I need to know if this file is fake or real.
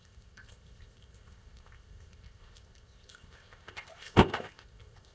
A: fake